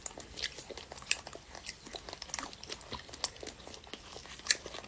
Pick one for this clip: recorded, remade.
recorded